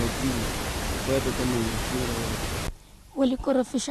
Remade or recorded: recorded